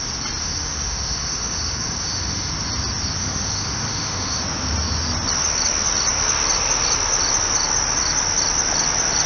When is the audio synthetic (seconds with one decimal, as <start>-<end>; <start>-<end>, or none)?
0.4-2.5; 3.2-4.4